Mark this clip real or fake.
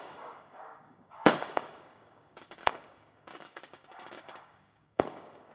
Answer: fake